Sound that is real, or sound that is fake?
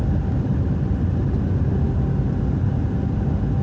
real